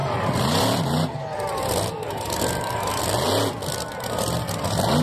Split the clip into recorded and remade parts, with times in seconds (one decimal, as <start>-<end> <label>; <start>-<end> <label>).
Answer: 0.0-3.0 remade; 3.0-5.0 recorded